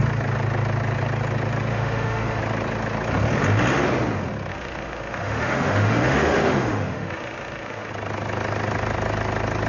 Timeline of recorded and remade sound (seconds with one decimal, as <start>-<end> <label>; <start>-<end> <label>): 0.0-1.7 recorded; 1.7-2.4 remade; 2.4-4.5 recorded; 4.5-7.9 remade; 7.9-9.7 recorded